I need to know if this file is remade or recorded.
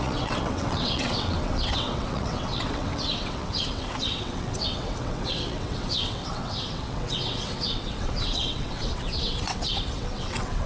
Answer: remade